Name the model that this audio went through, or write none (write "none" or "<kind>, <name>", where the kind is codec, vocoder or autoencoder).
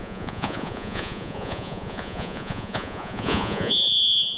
vocoder, Vocos